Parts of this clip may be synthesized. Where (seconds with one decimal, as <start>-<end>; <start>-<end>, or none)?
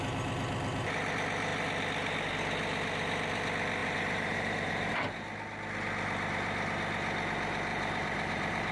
3.8-4.9; 7.7-8.7